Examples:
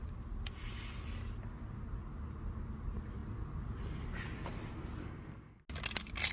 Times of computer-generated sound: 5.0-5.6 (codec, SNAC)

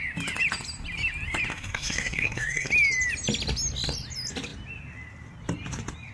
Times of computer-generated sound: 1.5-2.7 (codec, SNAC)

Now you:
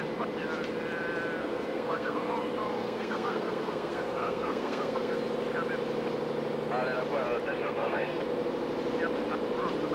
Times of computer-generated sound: 1.4-2.3 (codec, SNAC); 2.8-5.2; 7.6-8.2

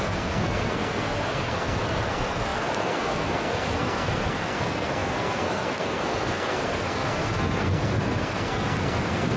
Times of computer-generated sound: 0.0-9.4 (codec, SNAC)

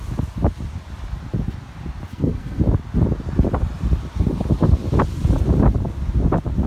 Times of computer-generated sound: 2.1-2.6 (codec, SNAC)

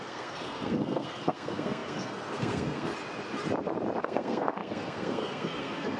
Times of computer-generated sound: 0.0-2.9 (codec, SNAC); 4.0-6.0

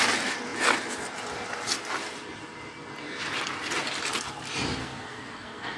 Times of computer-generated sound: 4.8-5.8 (codec, SNAC)

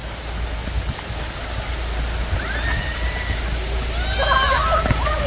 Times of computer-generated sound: none